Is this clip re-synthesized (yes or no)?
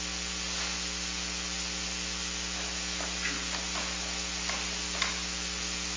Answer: no